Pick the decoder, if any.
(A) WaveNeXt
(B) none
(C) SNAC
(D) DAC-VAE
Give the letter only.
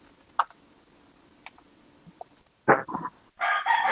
B